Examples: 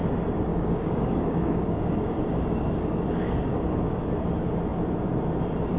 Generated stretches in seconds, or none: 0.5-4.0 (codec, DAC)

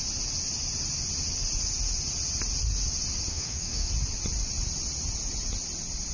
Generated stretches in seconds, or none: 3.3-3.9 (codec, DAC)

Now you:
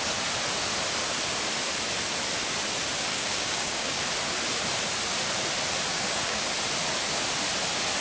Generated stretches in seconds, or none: 3.1-4.0 (codec, DAC); 5.9-6.5

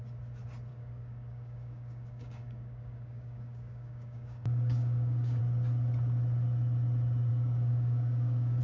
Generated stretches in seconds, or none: 0.7-5.4 (codec, DAC); 7.3-8.6

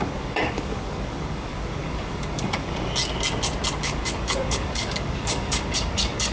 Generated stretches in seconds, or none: 0.0-3.0 (codec, DAC); 3.8-6.3

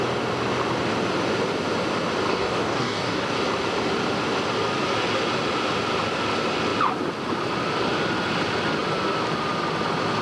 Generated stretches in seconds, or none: 2.3-3.3 (codec, DAC)

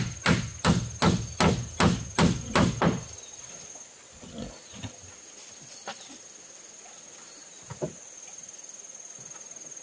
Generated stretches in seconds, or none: none

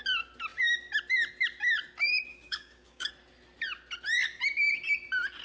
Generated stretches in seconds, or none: 2.3-3.1 (codec, DAC)